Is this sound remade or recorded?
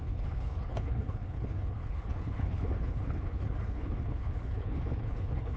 remade